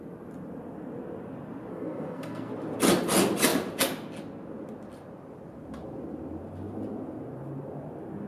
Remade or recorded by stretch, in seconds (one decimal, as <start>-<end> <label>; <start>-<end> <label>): 0.0-1.7 recorded; 1.7-2.5 remade; 2.5-8.3 recorded